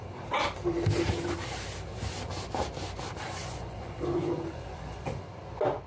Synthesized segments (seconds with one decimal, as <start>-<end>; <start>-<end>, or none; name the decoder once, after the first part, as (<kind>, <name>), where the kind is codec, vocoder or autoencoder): 3.4-5.1 (vocoder, Vocos)